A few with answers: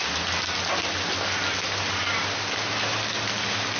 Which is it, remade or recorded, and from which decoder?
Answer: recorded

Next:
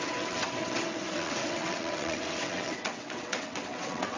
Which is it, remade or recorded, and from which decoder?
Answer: remade, vocoder, WaveNeXt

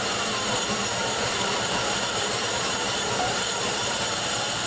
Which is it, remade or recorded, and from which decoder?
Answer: remade, vocoder, BigVGAN v2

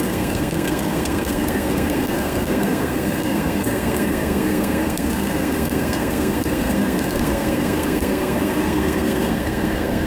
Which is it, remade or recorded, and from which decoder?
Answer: remade, codec, SNAC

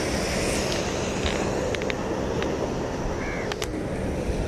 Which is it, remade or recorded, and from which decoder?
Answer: recorded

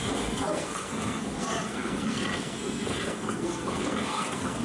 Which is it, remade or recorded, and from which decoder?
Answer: remade, codec, SNAC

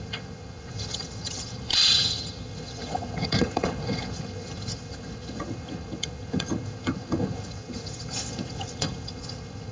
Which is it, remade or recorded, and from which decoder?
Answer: remade, vocoder, HiFi-GAN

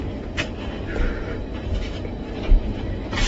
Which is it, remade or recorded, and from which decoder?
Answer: recorded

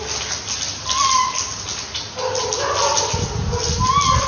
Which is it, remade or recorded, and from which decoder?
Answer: recorded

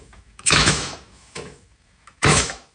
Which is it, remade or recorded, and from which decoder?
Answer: remade, autoencoder, DAC-VAE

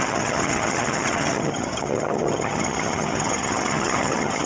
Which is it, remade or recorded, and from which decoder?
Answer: remade, vocoder, HiFi-GAN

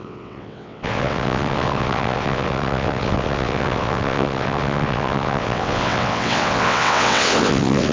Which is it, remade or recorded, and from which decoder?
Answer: remade, vocoder, WaveNeXt